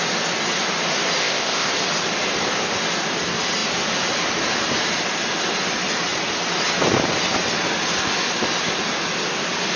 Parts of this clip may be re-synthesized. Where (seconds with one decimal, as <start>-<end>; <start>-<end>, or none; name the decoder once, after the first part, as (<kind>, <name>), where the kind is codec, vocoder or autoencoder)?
1.2-1.7 (codec, ZipCodec)